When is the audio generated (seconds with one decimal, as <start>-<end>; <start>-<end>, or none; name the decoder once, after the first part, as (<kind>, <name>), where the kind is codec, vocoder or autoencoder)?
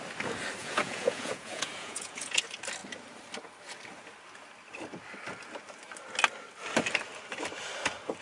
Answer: 0.6-2.4 (vocoder, Vocos)